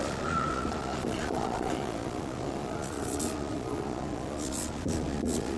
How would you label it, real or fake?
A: fake